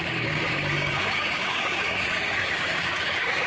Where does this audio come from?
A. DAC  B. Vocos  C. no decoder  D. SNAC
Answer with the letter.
A